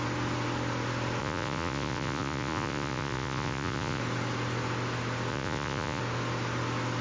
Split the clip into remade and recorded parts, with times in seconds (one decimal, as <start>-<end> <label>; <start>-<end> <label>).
0.0-1.2 recorded; 1.2-4.0 remade; 4.0-5.3 recorded; 5.3-6.0 remade; 6.0-7.0 recorded